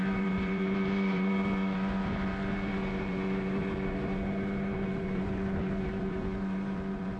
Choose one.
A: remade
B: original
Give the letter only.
A